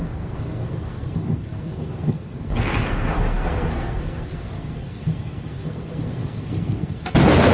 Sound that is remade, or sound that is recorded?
remade